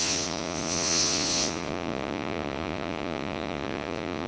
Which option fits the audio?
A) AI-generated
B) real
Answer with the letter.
A